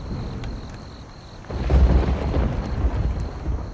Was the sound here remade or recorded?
recorded